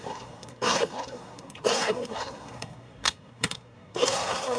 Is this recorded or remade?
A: remade